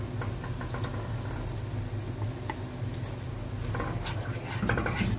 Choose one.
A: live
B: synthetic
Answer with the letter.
A